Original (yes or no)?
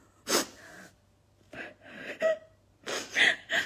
yes